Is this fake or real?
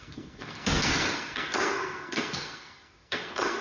fake